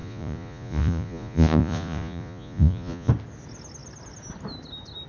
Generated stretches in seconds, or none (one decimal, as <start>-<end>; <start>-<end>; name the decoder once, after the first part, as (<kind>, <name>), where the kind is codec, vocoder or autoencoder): 0.0-3.1 (vocoder, Vocos)